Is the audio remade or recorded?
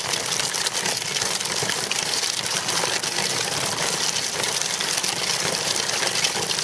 remade